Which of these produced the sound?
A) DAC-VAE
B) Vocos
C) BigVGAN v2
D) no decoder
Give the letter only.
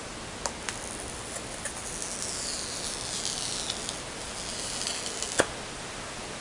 D